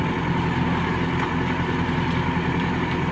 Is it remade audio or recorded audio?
recorded